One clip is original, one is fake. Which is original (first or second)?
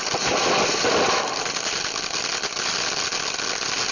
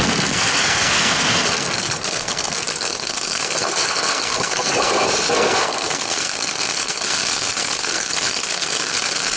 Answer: first